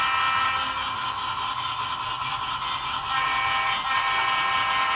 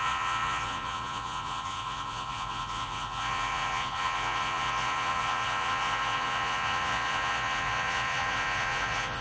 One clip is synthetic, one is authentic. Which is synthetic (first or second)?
second